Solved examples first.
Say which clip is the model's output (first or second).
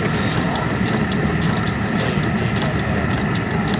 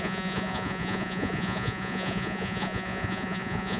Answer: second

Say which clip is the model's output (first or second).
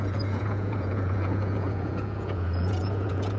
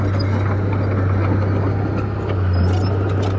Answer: first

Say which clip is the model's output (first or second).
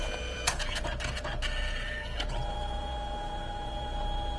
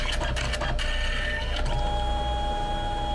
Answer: first